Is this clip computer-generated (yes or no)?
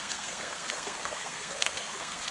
yes